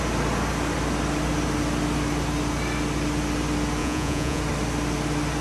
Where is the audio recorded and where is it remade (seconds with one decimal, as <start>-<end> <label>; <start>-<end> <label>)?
0.0-3.8 recorded; 3.8-4.4 remade; 4.4-5.4 recorded